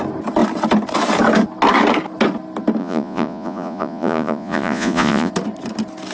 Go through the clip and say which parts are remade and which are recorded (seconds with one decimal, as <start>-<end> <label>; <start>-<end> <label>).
0.0-2.8 recorded; 2.8-5.3 remade; 5.3-6.1 recorded